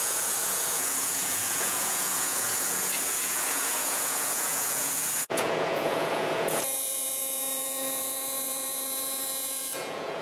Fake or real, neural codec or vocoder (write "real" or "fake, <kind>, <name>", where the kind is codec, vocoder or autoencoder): fake, vocoder, Vocos